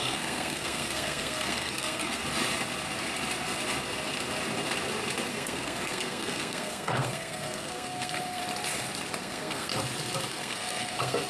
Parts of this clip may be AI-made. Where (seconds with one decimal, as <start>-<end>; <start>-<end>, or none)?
0.0-2.2; 5.3-8.4; 9.2-9.7; 10.3-11.3